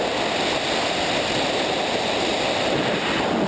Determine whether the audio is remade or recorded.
recorded